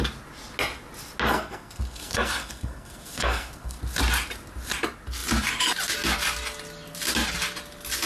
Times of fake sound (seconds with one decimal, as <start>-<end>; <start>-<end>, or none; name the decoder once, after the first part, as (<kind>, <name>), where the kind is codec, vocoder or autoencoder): 1.3-3.8 (codec, SNAC)